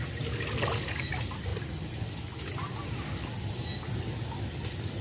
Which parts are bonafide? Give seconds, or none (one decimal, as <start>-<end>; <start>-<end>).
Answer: 0.0-5.0

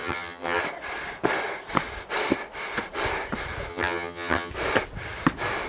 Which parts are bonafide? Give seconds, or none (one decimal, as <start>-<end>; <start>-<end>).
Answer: 0.6-3.7; 4.5-5.7

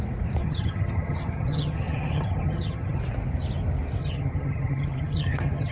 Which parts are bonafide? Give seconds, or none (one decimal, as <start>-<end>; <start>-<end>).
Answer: 0.0-0.4; 3.0-4.0

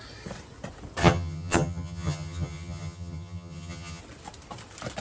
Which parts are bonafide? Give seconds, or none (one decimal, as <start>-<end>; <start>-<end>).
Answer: 0.0-1.0; 4.0-5.0